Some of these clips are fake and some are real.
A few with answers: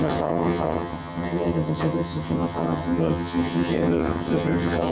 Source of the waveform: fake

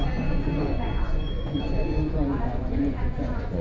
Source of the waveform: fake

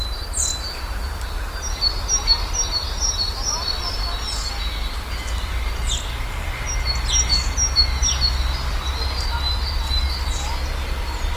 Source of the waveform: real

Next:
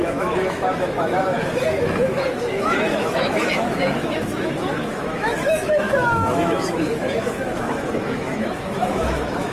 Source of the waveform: fake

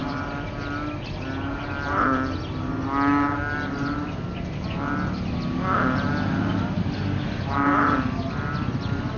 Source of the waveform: real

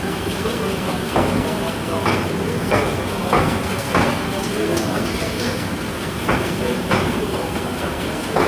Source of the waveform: fake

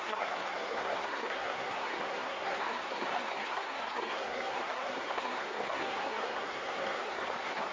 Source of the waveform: fake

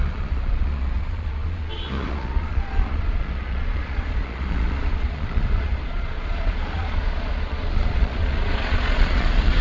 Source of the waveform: fake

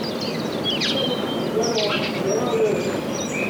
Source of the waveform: real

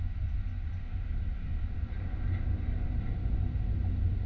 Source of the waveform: real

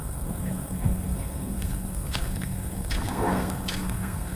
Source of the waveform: fake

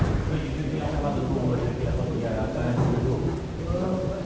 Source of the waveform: real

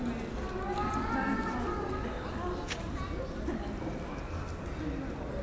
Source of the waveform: real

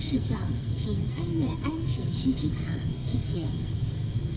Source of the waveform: fake